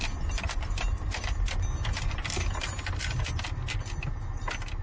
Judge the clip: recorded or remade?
recorded